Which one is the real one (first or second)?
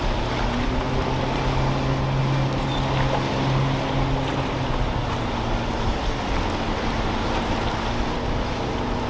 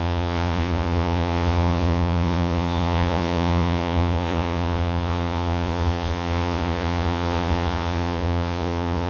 first